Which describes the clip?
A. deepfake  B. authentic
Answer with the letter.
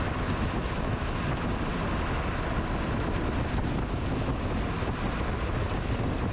B